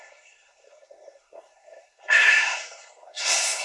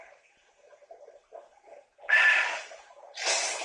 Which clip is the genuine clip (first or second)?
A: second